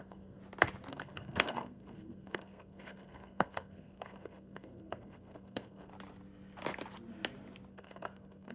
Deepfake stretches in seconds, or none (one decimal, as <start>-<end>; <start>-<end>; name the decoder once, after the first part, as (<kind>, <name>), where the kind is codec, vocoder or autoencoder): 0.0-0.4 (codec, SNAC); 0.9-5.9; 7.7-8.5